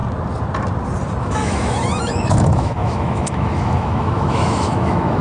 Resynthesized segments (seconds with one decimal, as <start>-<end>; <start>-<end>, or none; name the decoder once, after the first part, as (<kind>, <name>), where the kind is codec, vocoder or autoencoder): 1.2-5.2 (autoencoder, DAC-VAE)